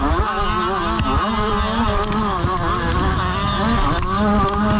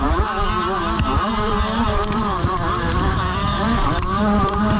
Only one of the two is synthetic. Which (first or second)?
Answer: second